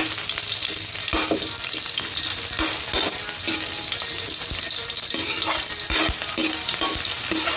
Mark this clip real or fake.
real